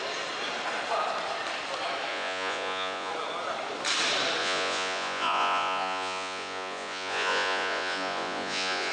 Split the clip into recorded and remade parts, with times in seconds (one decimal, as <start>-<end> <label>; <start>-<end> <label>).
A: 0.0-2.1 recorded; 2.1-3.1 remade; 3.1-4.4 recorded; 4.4-8.9 remade

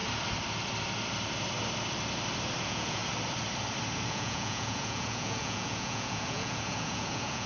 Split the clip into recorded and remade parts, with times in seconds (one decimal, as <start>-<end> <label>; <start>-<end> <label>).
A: 0.0-2.6 recorded; 2.6-3.0 remade; 3.0-4.1 recorded; 4.1-7.5 remade

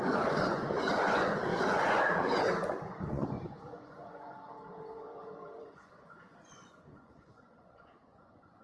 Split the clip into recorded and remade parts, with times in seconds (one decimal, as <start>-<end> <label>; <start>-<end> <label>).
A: 0.0-8.6 remade

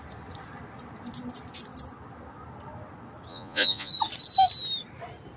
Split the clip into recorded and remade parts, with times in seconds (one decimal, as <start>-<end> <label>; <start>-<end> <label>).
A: 0.0-3.3 recorded; 3.3-3.9 remade; 3.9-5.4 recorded

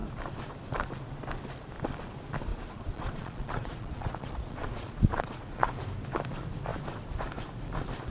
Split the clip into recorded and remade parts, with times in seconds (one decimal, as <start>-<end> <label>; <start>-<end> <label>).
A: 0.0-2.5 recorded; 2.5-5.7 remade; 5.7-8.1 recorded

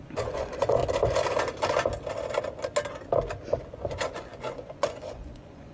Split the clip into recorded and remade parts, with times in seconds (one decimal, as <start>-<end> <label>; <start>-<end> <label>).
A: 0.0-0.8 remade; 0.8-3.7 recorded; 3.7-5.7 remade

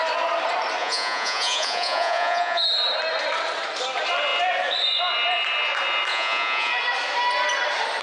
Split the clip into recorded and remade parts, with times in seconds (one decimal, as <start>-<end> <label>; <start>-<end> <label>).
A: 0.0-0.8 recorded; 0.8-2.6 remade; 2.6-6.1 recorded; 6.1-6.7 remade; 6.7-8.0 recorded